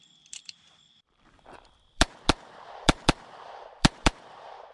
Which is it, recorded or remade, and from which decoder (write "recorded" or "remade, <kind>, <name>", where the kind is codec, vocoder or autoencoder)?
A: remade, vocoder, BigVGAN v2